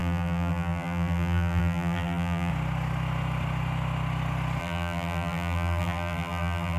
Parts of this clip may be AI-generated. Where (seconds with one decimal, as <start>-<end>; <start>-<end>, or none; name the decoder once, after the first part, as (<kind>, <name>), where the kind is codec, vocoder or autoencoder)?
0.0-2.5 (vocoder, BigVGAN v2); 4.6-6.8